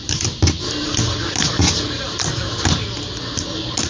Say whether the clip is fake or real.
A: real